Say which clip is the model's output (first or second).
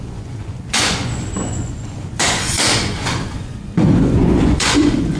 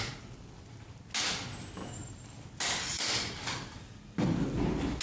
first